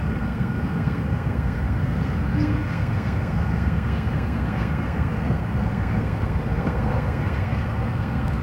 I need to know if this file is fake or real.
fake